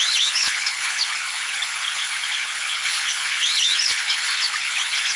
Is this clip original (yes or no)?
no